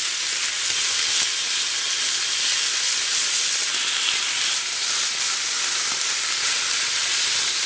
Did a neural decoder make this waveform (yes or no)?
no